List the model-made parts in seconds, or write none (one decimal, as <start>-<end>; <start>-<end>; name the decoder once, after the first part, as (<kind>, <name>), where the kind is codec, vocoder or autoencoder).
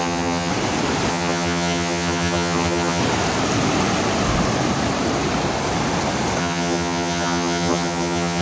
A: 0.0-0.5 (vocoder, HiFi-GAN); 1.1-3.0; 6.4-8.4